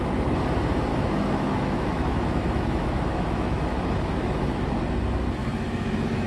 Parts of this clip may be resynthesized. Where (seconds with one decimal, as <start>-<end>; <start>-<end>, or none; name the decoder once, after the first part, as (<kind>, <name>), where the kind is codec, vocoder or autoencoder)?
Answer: 0.9-4.7 (autoencoder, DAC-VAE); 5.4-6.3